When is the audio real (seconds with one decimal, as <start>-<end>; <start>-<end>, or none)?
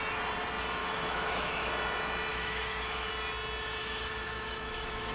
0.0-0.8; 1.7-2.3; 3.1-3.8